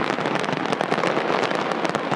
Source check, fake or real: real